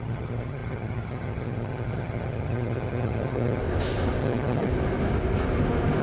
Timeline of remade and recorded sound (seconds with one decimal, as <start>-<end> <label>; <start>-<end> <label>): 0.0-3.6 remade; 3.6-4.2 recorded; 4.2-4.7 remade; 4.7-6.0 recorded